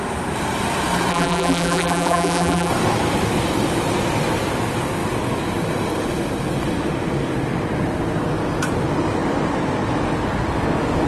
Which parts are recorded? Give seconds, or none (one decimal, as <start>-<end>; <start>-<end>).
0.0-1.1; 2.7-11.1